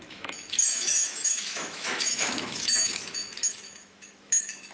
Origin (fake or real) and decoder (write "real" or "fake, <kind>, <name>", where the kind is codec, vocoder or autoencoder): fake, autoencoder, DAC-VAE